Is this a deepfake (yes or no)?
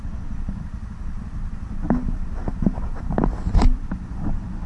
no